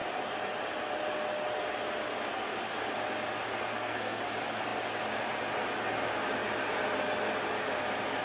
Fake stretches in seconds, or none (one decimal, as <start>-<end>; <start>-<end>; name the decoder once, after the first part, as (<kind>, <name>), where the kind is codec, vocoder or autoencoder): 3.7-4.2 (codec, SNAC)